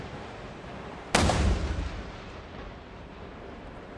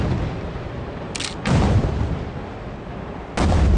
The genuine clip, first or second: second